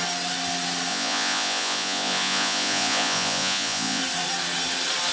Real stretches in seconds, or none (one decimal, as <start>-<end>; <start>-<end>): 0.0-0.9; 4.0-5.1